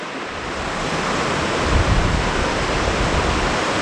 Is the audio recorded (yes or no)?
no